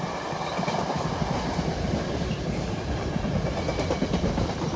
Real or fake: real